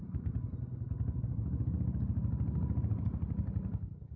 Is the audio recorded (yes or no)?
yes